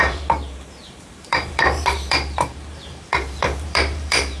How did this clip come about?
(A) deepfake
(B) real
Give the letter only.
A